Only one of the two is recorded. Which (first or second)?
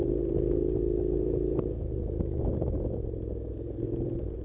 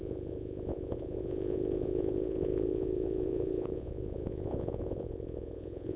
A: first